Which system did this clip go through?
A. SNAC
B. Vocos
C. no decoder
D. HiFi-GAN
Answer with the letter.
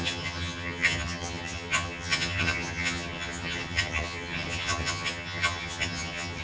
D